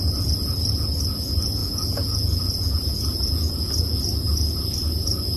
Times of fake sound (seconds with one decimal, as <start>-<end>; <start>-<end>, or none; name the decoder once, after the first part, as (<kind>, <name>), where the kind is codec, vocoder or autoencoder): 1.6-4.0 (vocoder, Vocos)